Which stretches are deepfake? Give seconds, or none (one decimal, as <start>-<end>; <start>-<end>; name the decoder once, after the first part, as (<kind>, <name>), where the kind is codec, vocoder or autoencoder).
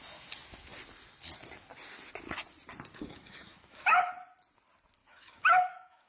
2.9-4.1 (autoencoder, DAC-VAE); 5.0-6.1